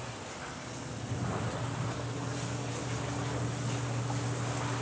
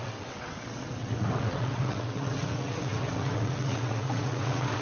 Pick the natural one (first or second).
first